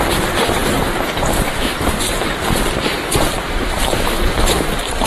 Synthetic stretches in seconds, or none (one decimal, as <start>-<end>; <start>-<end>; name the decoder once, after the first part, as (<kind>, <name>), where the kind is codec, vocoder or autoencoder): 0.0-5.1 (vocoder, BigVGAN v2)